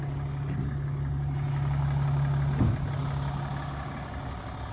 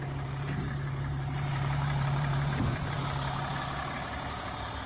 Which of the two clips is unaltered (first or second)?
first